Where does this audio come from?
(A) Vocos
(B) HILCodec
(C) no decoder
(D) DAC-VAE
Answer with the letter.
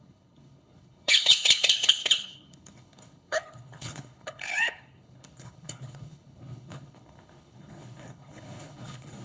B